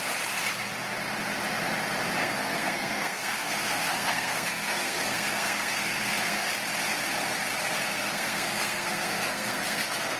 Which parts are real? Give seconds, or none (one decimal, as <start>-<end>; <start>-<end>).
0.0-2.2; 6.5-7.9